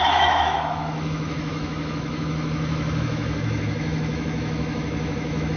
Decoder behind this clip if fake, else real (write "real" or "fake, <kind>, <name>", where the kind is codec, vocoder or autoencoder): fake, autoencoder, DAC-VAE